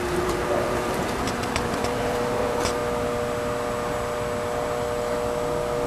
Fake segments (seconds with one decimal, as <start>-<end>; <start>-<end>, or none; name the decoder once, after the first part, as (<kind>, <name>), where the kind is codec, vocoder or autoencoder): 0.0-2.8 (vocoder, BigVGAN v2)